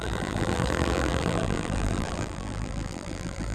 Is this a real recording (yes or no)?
no